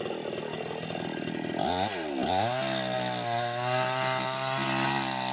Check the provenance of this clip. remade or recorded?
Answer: recorded